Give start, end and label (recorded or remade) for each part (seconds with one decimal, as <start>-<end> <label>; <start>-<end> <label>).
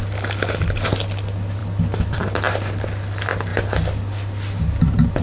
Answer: 0.0-5.2 recorded